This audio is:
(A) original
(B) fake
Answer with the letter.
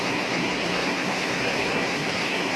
B